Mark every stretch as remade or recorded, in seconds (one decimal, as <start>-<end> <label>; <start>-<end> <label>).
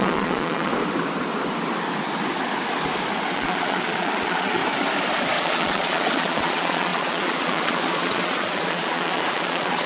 0.0-0.7 remade; 0.7-3.3 recorded; 3.3-4.6 remade; 4.6-5.4 recorded; 5.4-9.9 remade